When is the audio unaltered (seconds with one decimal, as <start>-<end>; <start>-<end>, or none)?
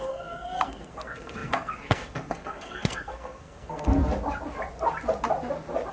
3.9-5.9